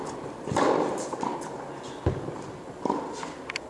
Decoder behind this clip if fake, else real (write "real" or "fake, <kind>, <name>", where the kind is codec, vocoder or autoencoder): real